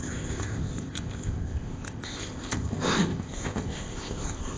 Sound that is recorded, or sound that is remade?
remade